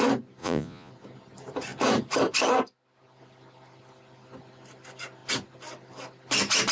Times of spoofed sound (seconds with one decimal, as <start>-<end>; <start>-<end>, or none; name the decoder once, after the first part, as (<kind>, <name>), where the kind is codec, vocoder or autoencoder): 0.4-0.9 (vocoder, Vocos)